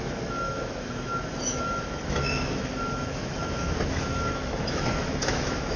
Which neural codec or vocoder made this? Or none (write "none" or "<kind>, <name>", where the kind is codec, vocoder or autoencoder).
autoencoder, DAC-VAE